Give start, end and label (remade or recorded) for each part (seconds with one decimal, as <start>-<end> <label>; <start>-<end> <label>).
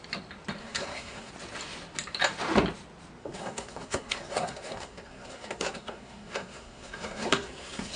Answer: 0.0-0.6 recorded; 0.6-1.3 remade; 1.3-3.2 recorded; 3.2-8.0 remade